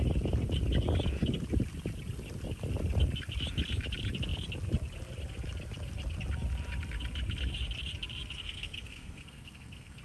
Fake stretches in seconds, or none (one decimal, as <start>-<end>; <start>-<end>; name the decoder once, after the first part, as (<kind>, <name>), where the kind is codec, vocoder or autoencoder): 8.4-10.0 (codec, SNAC)